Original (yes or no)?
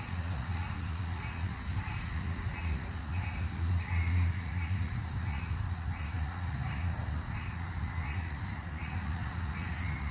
no